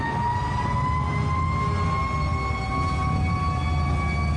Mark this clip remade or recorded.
recorded